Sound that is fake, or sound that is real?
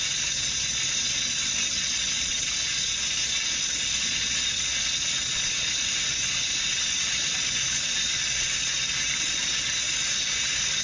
real